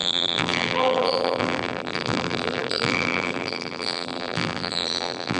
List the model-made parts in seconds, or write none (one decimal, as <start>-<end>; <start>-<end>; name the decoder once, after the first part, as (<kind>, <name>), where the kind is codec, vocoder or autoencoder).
0.0-5.4 (vocoder, BigVGAN v2)